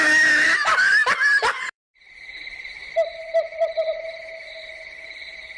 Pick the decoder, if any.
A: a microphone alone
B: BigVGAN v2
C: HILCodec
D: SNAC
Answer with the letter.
B